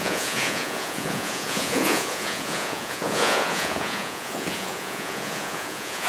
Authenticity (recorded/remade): remade